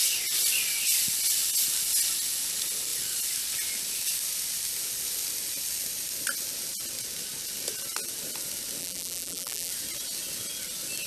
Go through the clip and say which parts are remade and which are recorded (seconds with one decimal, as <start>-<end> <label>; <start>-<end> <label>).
0.0-8.8 recorded; 8.8-9.7 remade; 9.7-11.1 recorded